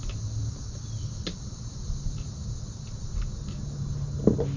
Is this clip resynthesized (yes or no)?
no